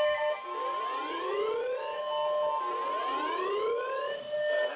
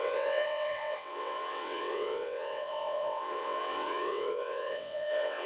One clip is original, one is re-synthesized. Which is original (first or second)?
first